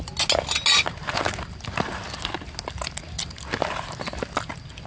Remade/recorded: recorded